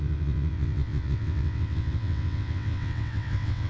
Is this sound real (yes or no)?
no